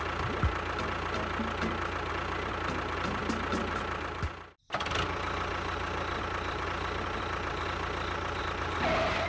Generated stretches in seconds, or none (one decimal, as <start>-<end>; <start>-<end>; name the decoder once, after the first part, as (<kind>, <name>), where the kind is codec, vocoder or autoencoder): none